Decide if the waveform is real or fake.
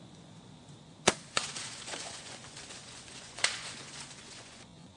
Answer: fake